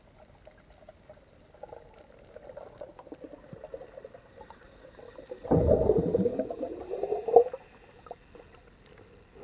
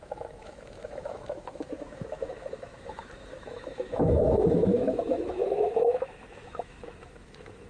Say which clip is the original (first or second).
first